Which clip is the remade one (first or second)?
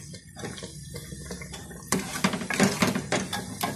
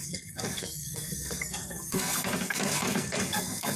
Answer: second